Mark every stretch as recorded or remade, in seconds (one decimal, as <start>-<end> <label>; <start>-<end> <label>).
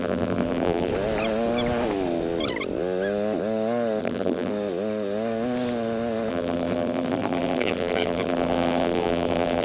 0.0-0.9 remade; 0.9-4.0 recorded; 4.0-4.5 remade; 4.5-6.3 recorded; 6.3-9.6 remade